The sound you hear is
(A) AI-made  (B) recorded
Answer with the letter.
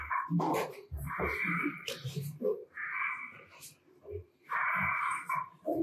A